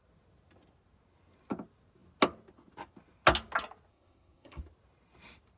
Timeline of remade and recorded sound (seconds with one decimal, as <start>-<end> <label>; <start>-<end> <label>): 0.0-3.9 recorded; 3.9-4.6 remade; 4.6-5.6 recorded